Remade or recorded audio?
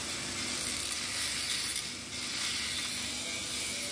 recorded